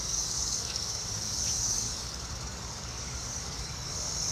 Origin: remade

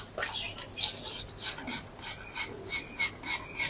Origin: recorded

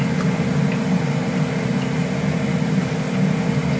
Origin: recorded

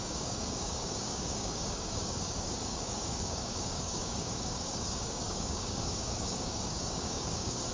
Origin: remade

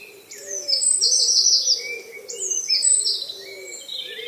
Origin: recorded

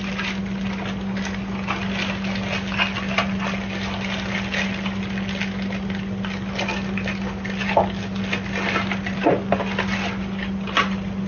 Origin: recorded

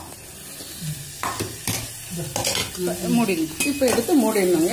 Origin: recorded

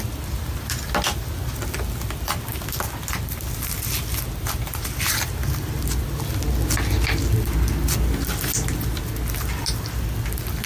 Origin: recorded